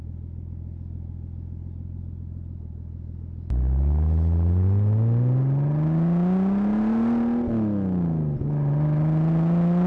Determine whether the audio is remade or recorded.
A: recorded